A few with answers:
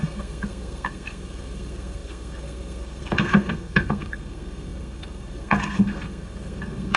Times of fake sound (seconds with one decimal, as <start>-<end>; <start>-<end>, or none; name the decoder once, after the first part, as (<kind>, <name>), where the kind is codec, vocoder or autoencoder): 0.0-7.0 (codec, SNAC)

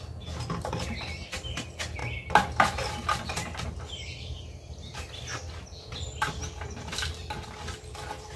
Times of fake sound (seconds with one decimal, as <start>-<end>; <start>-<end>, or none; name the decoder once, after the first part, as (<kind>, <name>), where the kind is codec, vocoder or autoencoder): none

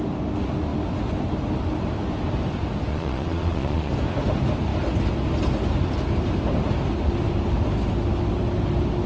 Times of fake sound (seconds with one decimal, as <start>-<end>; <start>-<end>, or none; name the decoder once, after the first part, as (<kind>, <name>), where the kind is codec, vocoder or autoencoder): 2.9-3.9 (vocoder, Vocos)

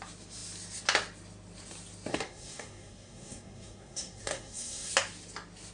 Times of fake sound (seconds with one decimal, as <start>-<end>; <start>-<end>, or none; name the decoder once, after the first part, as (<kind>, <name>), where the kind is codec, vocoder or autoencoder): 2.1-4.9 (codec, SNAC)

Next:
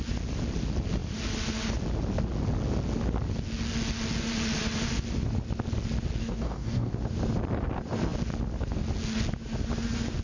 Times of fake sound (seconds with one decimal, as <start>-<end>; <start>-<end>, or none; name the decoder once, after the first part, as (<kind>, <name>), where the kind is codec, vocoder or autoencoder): 6.2-6.9 (codec, DAC)

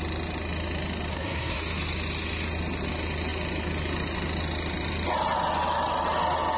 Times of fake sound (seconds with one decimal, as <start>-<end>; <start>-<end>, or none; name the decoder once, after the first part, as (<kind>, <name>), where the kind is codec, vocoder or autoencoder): 1.1-1.6 (codec, SNAC)

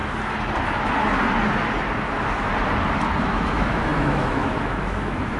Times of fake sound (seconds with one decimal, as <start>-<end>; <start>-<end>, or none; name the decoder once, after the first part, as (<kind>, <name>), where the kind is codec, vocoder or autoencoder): 3.2-5.4 (autoencoder, DAC-VAE)

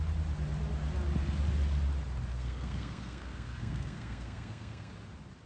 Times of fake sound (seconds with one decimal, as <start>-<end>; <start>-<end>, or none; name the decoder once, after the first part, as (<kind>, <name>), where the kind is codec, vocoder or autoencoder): 2.3-4.9 (codec, SNAC)